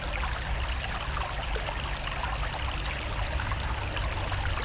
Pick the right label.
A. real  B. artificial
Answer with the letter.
A